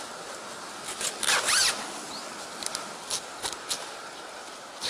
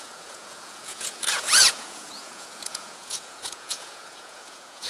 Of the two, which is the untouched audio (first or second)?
first